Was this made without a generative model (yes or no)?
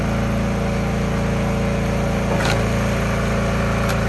yes